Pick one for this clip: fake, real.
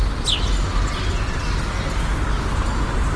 real